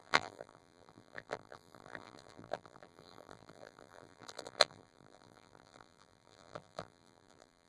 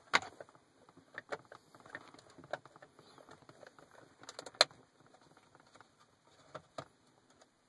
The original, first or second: second